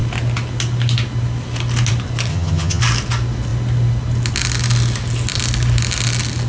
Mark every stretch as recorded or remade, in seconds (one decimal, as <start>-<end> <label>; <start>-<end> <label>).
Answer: 0.0-2.3 recorded; 2.3-2.8 remade; 2.8-6.5 recorded